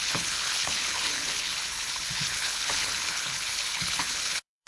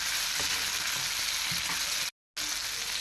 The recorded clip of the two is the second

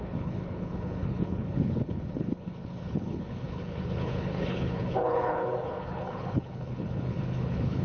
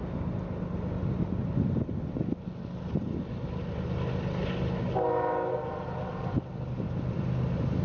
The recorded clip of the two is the second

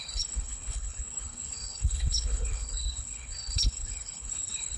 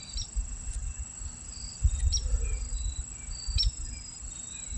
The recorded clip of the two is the second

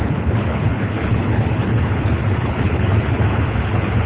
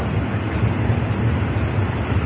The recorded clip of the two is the second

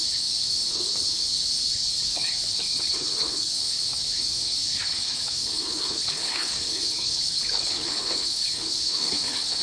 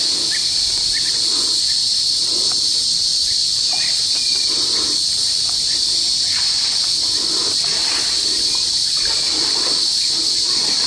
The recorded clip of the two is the second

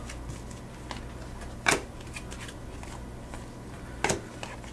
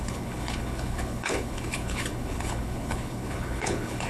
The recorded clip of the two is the first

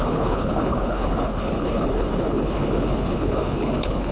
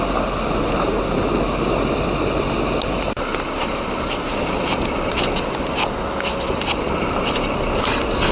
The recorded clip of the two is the second